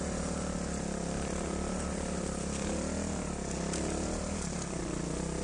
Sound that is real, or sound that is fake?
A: real